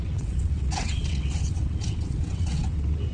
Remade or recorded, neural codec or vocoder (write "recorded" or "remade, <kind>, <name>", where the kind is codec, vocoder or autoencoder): remade, vocoder, WaveNeXt